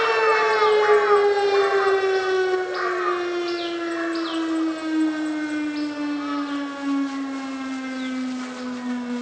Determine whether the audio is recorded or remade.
recorded